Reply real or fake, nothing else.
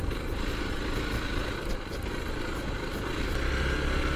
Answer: real